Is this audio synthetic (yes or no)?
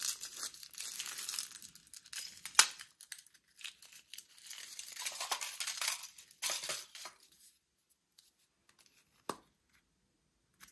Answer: no